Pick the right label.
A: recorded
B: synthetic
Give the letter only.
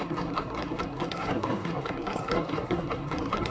B